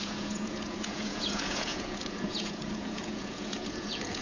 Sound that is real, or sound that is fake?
fake